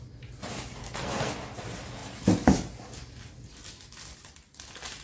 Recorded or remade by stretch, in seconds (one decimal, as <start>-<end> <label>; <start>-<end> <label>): 0.0-0.8 recorded; 0.8-1.3 remade; 1.3-5.0 recorded